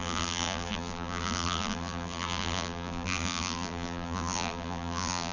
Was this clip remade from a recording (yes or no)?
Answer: yes